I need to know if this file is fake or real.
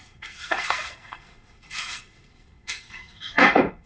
fake